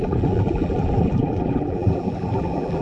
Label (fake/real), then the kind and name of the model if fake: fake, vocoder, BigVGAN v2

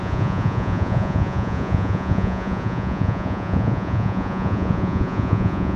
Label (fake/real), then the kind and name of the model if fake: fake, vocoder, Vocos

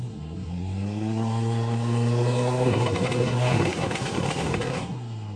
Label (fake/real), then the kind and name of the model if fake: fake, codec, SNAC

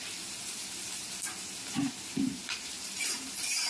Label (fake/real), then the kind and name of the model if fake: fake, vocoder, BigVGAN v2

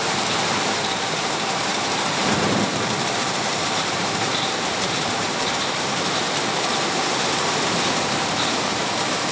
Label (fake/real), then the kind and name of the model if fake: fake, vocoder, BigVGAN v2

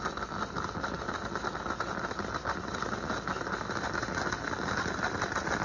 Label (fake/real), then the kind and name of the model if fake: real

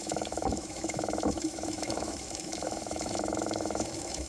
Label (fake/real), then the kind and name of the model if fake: fake, autoencoder, DAC-VAE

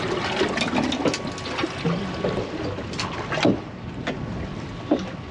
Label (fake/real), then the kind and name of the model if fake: real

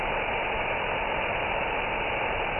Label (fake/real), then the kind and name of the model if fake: real